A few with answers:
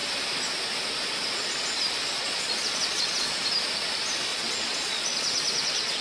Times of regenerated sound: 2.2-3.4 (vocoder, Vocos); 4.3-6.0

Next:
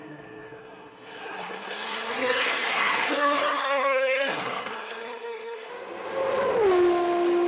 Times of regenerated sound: 0.0-5.7 (codec, SNAC)

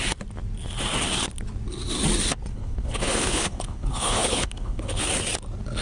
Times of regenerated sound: 2.5-5.1 (codec, HILCodec)

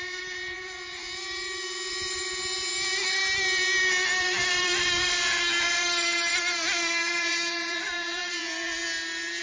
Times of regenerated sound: 0.0-3.2 (vocoder, BigVGAN v2); 4.2-8.8

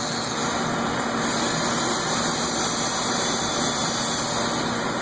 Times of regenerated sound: none

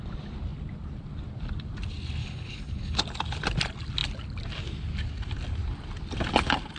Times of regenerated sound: 2.2-3.0 (codec, HILCodec)